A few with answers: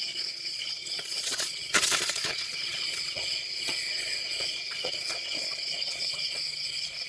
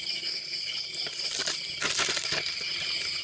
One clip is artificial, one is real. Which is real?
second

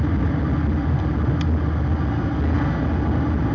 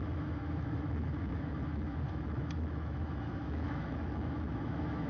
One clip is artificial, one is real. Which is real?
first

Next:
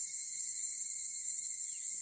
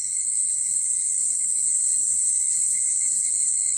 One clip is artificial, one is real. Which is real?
first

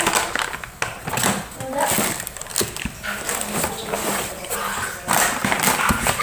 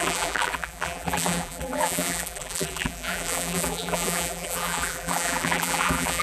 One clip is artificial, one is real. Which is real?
first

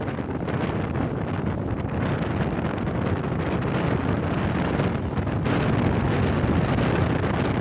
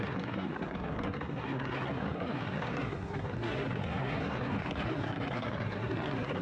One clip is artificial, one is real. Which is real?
first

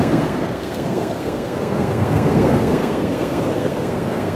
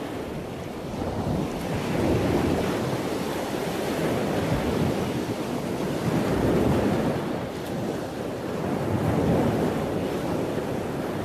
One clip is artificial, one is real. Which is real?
second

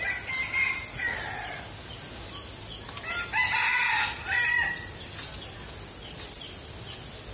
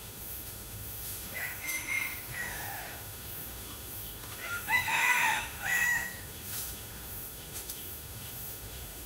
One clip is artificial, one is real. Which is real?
first